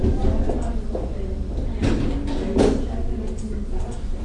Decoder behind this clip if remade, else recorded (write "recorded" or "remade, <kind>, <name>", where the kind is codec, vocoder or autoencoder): recorded